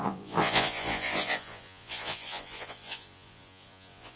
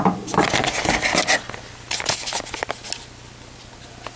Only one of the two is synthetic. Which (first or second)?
first